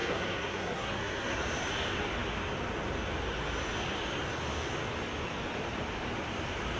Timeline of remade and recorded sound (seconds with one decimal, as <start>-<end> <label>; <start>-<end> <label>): 0.0-1.4 remade; 1.4-6.8 recorded